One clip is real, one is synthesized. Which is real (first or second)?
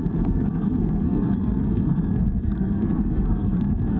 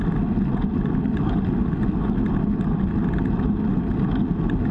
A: second